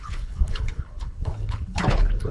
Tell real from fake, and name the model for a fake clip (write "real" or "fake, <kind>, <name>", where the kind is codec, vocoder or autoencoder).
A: fake, codec, HILCodec